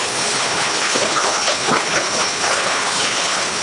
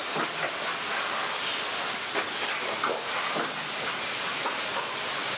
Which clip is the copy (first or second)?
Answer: first